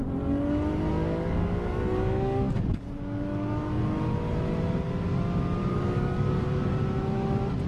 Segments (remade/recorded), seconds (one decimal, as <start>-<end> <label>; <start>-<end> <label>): 0.0-0.9 recorded; 0.9-3.8 remade; 3.8-5.6 recorded; 5.6-6.7 remade; 6.7-7.7 recorded